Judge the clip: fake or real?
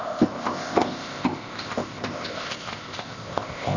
fake